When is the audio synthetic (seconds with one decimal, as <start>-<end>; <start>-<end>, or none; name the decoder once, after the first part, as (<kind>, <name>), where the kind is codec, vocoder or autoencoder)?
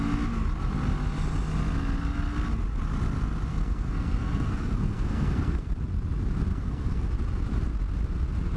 3.5-5.7 (codec, SNAC); 6.5-7.1